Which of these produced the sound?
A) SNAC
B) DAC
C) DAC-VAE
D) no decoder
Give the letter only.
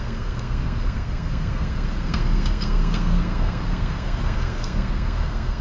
A